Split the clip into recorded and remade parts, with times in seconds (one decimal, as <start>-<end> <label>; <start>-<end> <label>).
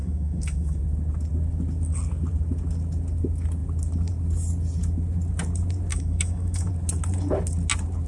0.0-0.8 remade; 0.8-5.9 recorded; 5.9-6.7 remade; 6.7-8.1 recorded